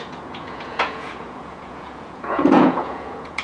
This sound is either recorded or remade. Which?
remade